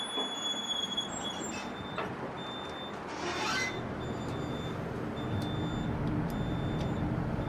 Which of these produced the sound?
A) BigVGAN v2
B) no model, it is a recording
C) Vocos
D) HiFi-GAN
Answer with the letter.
B